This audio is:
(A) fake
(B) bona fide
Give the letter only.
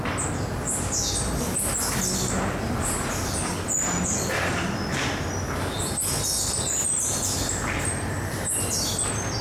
B